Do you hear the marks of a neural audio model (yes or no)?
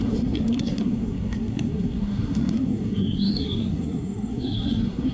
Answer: yes